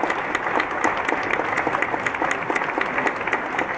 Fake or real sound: real